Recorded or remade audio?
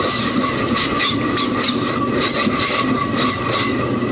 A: recorded